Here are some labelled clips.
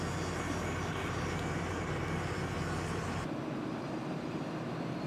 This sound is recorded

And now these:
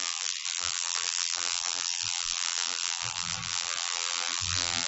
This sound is remade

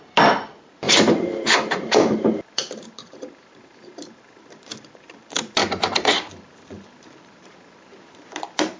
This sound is remade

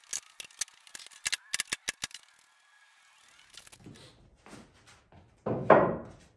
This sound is recorded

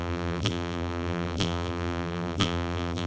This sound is remade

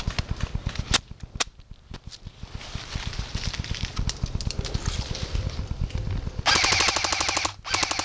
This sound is recorded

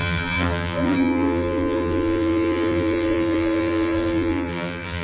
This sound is remade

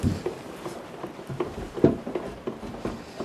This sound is recorded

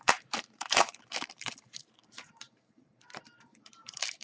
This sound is remade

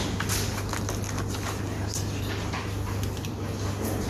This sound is recorded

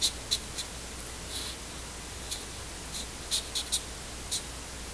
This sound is recorded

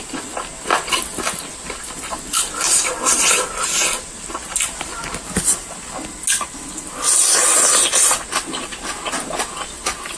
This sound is recorded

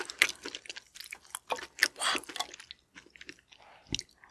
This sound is recorded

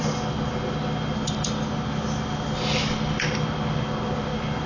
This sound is recorded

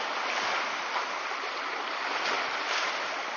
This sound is recorded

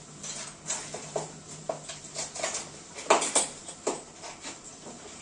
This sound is recorded